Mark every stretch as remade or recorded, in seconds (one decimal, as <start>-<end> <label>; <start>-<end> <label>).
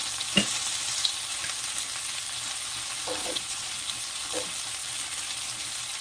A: 0.0-3.2 recorded; 3.2-3.8 remade; 3.8-6.0 recorded